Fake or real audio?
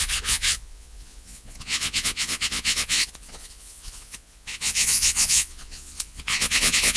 fake